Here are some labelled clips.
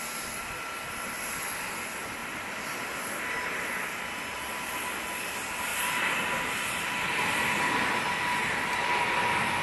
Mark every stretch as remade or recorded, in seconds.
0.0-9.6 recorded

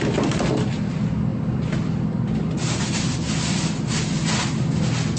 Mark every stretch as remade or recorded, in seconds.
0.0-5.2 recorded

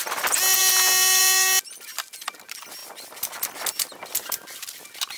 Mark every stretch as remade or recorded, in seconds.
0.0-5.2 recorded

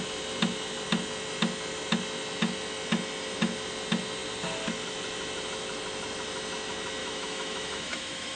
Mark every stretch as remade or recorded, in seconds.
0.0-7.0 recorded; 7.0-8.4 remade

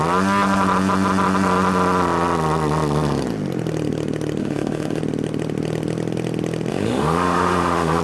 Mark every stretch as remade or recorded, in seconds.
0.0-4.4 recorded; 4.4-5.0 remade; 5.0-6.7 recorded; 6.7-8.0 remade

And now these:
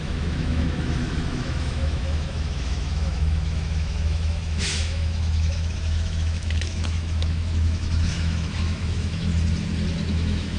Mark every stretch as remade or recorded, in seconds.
0.0-9.3 remade; 9.3-10.1 recorded; 10.1-10.6 remade

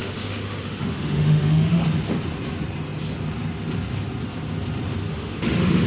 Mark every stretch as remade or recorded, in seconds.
0.0-1.8 remade; 1.8-5.1 recorded; 5.1-5.9 remade